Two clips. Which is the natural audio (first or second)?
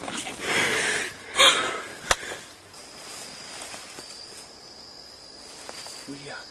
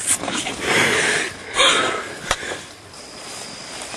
first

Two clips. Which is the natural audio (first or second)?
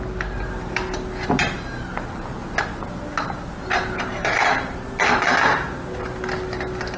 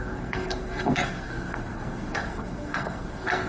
first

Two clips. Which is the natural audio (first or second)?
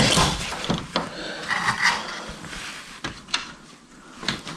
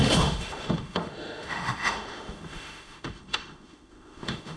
first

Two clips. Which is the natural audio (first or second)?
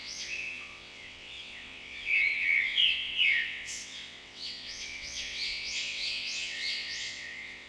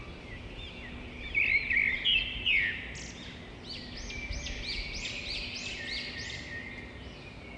second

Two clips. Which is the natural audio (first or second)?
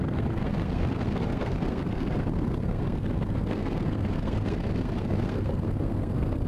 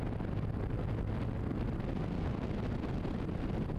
second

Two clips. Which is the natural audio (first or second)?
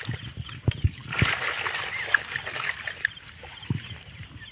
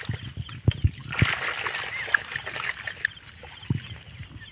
second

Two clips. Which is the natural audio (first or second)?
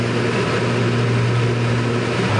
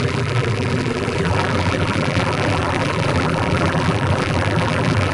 first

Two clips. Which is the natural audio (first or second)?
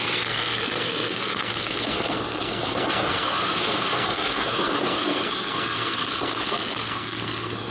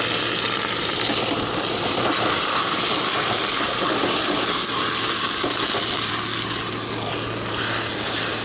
second